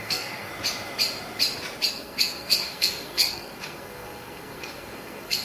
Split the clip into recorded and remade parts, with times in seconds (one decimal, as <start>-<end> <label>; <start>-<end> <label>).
0.0-0.5 remade; 0.5-1.9 recorded; 1.9-5.4 remade